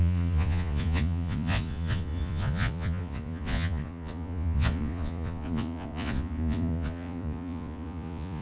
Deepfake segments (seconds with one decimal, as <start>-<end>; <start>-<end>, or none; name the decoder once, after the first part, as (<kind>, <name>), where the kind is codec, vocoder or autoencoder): 0.0-8.4 (vocoder, Vocos)